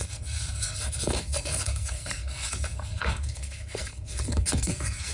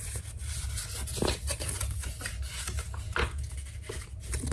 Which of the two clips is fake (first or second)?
first